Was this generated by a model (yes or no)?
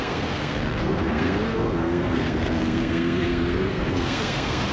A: yes